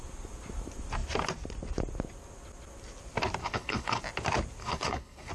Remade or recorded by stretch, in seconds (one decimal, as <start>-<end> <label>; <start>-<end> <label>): 0.0-3.4 recorded; 3.4-4.0 remade; 4.0-4.6 recorded; 4.6-5.3 remade